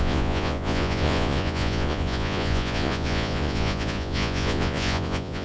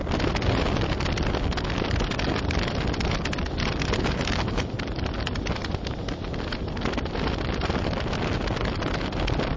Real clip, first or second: second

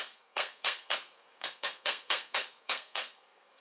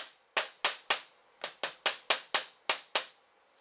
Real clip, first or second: second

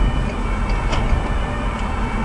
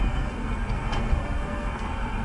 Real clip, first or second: first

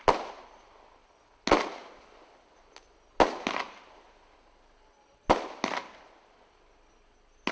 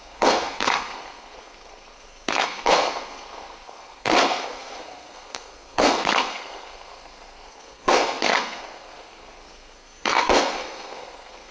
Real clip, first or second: first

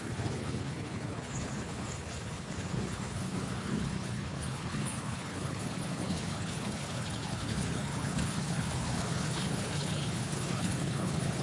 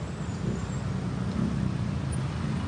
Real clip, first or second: second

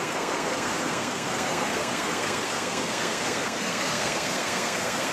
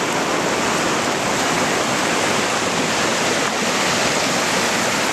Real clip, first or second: second